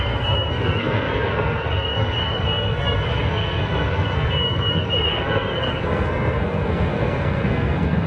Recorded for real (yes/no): no